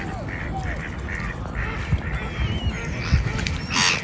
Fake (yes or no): no